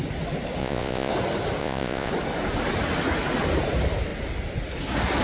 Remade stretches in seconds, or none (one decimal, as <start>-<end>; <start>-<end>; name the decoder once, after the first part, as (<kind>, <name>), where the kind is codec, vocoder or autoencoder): 0.6-1.1 (vocoder, Vocos); 1.6-2.1